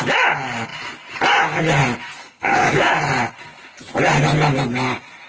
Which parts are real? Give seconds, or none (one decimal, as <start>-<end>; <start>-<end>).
0.0-2.0; 2.9-5.3